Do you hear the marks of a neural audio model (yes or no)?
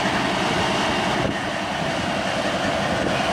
no